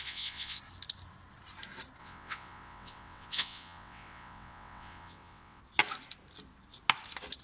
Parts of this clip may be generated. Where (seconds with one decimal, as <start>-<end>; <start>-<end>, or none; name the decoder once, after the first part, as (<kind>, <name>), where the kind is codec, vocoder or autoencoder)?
0.0-0.6 (vocoder, WaveNeXt); 2.0-5.6